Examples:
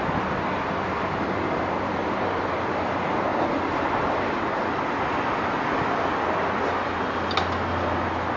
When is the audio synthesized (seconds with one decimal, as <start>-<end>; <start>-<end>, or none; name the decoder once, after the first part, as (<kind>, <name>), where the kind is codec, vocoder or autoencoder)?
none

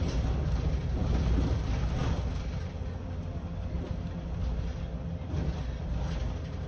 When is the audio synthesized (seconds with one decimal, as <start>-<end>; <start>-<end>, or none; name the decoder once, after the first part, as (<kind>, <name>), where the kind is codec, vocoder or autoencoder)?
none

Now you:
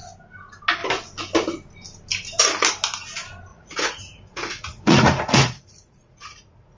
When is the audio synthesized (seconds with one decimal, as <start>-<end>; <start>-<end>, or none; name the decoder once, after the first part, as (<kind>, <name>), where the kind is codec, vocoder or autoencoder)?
3.5-6.8 (vocoder, Vocos)

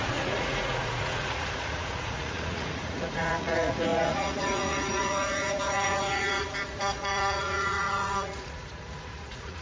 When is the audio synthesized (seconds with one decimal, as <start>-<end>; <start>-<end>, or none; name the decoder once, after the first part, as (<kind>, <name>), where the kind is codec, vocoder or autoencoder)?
0.0-9.6 (vocoder, Vocos)

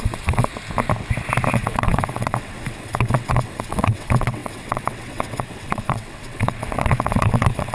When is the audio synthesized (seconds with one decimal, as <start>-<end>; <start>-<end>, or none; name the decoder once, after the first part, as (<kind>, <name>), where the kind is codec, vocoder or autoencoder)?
0.0-0.5 (vocoder, WaveNeXt); 1.5-7.7

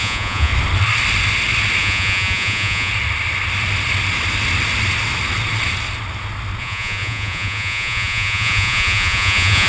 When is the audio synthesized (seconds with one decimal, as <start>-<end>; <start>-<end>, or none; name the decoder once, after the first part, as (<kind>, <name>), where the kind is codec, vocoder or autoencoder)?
0.0-0.5 (vocoder, Vocos); 1.8-2.9; 6.6-9.7

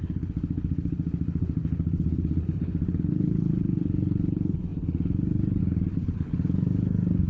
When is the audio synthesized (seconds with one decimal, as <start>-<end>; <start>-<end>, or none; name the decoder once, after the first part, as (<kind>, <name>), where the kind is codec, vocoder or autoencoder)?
0.0-7.3 (codec, HILCodec)

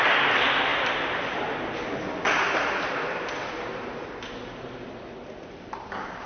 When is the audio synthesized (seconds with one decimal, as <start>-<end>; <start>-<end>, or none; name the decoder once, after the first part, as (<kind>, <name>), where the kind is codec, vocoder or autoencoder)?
none